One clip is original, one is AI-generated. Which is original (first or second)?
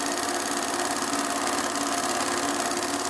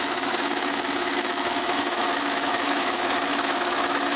first